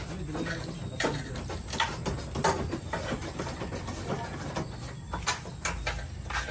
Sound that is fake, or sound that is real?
real